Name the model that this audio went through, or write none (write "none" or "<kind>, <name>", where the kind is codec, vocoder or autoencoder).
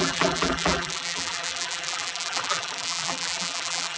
vocoder, BigVGAN v2